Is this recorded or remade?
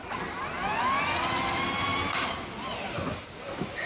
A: recorded